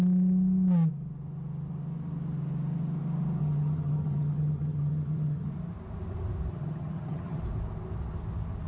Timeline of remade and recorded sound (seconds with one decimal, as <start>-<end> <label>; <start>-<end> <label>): 0.0-3.4 recorded; 3.4-5.5 remade; 5.5-6.5 recorded; 6.5-7.4 remade; 7.4-8.7 recorded